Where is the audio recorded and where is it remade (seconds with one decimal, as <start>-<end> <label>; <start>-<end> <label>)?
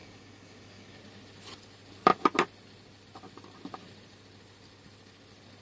0.0-1.0 remade; 1.0-5.6 recorded